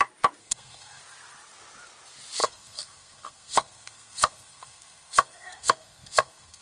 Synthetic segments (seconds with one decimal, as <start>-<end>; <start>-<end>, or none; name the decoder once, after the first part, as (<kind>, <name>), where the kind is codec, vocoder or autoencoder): 0.4-1.0 (codec, SNAC); 2.4-6.6